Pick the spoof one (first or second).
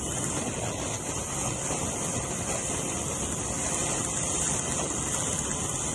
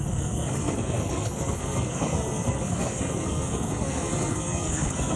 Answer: second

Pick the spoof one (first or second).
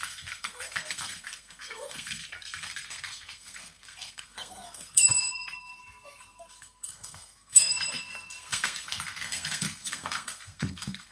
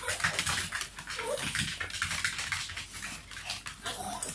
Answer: first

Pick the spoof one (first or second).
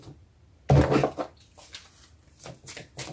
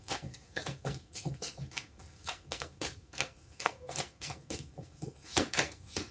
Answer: second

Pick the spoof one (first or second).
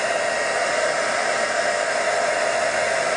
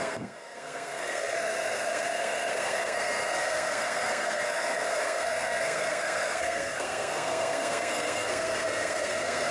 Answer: second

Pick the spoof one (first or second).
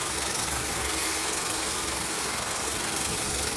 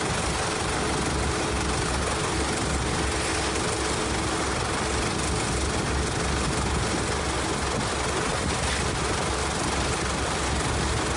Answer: first